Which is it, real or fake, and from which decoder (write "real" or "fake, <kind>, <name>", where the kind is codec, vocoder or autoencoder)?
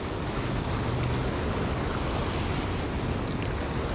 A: real